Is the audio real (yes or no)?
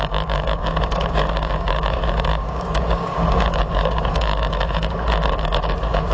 no